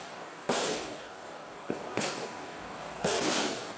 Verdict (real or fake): fake